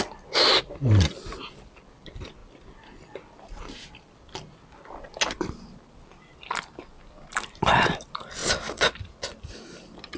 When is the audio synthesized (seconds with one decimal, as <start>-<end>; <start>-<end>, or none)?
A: none